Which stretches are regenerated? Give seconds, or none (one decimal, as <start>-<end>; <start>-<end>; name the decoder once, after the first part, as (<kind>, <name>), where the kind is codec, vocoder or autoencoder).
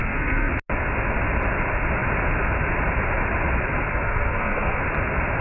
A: 0.0-0.5 (codec, SNAC); 3.9-4.8